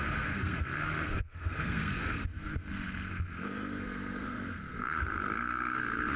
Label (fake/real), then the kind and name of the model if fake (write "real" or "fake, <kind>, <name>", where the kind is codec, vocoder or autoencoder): fake, codec, SNAC